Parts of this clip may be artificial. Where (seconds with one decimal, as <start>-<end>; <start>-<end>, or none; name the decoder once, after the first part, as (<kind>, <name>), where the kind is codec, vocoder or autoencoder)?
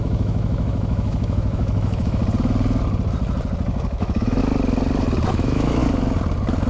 0.0-2.2 (autoencoder, DAC-VAE); 3.9-4.4; 5.3-5.8